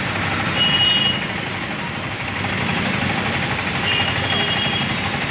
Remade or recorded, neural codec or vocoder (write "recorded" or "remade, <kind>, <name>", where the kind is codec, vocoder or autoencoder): recorded